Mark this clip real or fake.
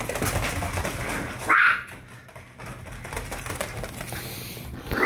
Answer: real